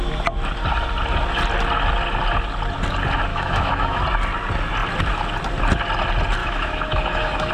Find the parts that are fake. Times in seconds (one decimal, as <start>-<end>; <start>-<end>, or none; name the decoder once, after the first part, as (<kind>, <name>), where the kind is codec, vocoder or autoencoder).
3.3-4.0 (autoencoder, DAC-VAE); 6.4-7.5